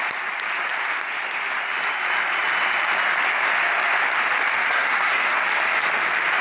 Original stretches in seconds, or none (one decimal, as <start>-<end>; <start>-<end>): 0.0-4.6; 5.4-6.4